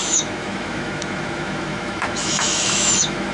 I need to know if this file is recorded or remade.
remade